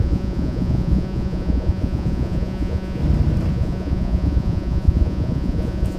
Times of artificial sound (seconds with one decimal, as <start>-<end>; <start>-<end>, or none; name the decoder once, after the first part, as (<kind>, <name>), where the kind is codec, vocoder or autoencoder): 0.0-3.0 (vocoder, Vocos); 3.5-6.0